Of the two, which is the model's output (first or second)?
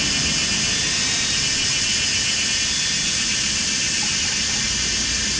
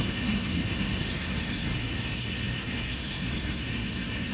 second